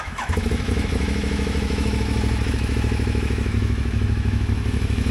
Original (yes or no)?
no